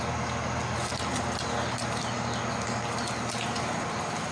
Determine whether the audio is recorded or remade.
recorded